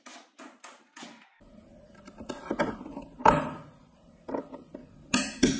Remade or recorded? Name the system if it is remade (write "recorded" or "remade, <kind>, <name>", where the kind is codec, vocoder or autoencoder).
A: recorded